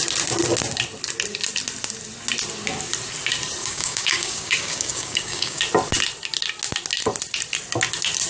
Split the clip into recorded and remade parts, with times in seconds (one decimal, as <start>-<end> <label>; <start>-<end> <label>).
0.0-3.6 recorded; 3.6-5.6 remade; 5.6-8.3 recorded